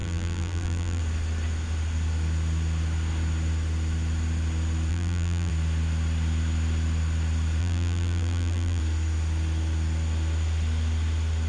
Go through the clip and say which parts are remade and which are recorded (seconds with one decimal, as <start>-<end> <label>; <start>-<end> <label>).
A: 0.0-1.0 remade; 1.0-4.9 recorded; 4.9-5.5 remade; 5.5-7.6 recorded; 7.6-8.8 remade; 8.8-11.5 recorded

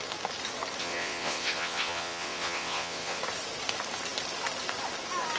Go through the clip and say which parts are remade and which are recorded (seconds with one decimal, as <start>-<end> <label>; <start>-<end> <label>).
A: 0.0-0.8 recorded; 0.8-3.2 remade; 3.2-5.4 recorded

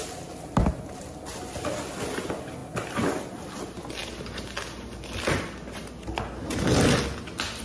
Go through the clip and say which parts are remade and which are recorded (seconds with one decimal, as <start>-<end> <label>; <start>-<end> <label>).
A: 0.0-7.6 recorded

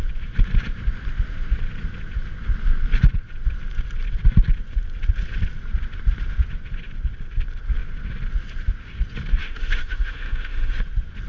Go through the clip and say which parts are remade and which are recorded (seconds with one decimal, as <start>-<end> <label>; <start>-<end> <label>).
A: 0.0-9.4 recorded; 9.4-10.8 remade; 10.8-11.3 recorded